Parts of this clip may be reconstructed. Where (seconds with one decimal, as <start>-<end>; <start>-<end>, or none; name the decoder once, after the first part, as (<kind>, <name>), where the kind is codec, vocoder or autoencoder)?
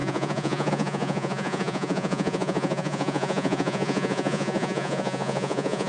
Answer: 0.0-5.9 (vocoder, Vocos)